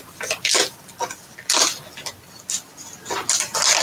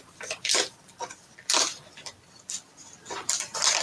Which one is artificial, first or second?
second